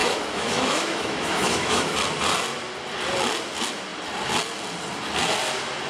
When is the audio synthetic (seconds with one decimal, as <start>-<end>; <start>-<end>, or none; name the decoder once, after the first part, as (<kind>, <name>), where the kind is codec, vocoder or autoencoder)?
0.0-1.9 (autoencoder, DAC-VAE)